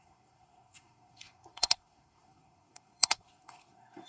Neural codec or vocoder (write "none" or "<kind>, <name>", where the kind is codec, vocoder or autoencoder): codec, SNAC